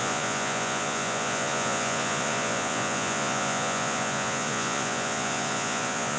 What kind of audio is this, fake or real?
fake